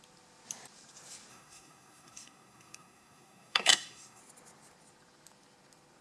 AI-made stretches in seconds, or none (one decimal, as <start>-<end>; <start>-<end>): 1.3-4.2